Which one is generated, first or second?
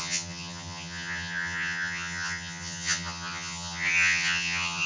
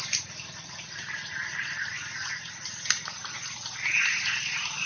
first